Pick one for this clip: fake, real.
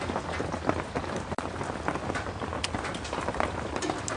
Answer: real